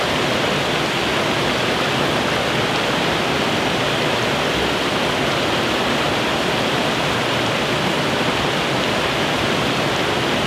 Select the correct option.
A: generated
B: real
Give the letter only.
B